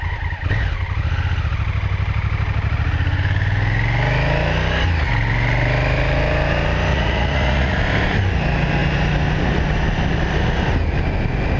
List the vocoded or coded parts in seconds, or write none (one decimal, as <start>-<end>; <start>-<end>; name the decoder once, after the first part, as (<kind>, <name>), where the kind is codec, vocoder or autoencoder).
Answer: 6.9-7.8 (vocoder, Vocos)